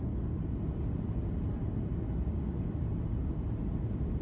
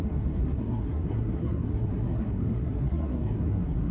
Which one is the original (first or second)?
first